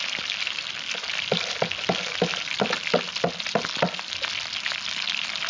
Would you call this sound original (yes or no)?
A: yes